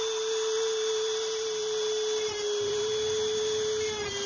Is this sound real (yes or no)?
no